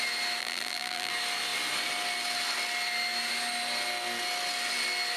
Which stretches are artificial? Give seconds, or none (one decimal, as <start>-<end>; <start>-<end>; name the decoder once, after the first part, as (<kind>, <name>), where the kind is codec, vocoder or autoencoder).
0.4-1.1 (vocoder, BigVGAN v2)